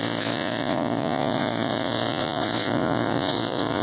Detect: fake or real fake